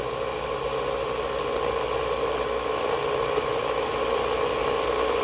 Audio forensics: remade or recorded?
recorded